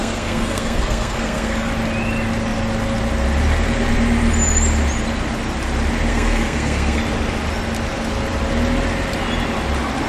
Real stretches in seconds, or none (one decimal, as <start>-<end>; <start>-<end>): 1.7-6.1; 7.0-10.1